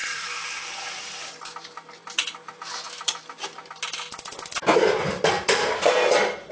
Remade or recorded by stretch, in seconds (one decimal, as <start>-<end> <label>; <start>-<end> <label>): 0.0-0.7 remade; 0.7-6.5 recorded